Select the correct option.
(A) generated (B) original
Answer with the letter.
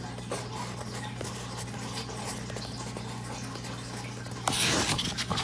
B